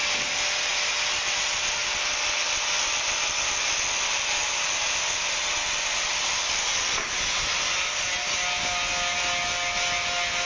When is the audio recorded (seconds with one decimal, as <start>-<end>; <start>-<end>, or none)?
0.0-10.4